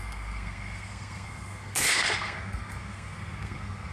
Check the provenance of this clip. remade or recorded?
remade